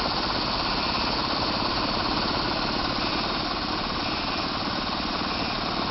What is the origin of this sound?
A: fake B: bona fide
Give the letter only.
B